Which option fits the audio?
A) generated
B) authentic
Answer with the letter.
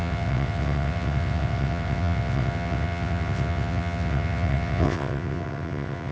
A